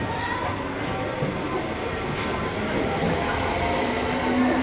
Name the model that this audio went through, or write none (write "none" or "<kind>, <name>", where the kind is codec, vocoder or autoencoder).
none